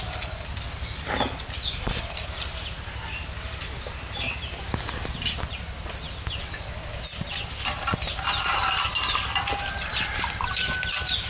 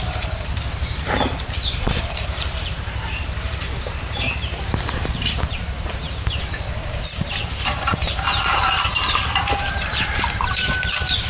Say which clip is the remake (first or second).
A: second